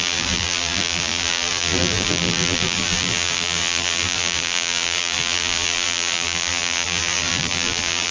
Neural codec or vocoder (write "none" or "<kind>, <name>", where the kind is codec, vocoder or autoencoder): vocoder, BigVGAN v2